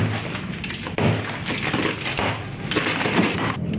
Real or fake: real